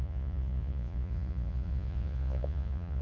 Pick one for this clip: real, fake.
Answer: fake